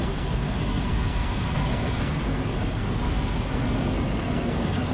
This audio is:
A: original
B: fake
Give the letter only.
B